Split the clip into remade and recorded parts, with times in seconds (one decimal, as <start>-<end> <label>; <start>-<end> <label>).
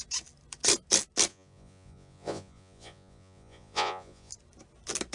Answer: 0.0-1.3 recorded; 1.3-4.3 remade; 4.3-5.1 recorded